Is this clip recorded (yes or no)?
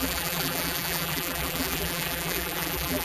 no